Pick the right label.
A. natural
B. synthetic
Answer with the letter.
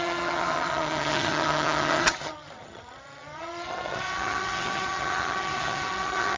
B